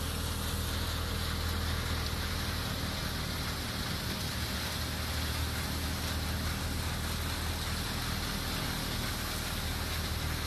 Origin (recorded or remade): recorded